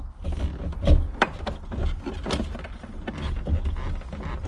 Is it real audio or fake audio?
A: real